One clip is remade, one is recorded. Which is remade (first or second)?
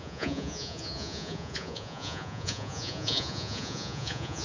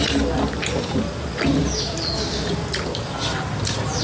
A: first